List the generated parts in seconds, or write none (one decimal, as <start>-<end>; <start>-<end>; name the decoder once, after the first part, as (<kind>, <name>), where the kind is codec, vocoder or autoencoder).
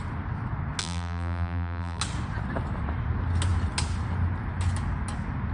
0.8-2.0 (vocoder, BigVGAN v2)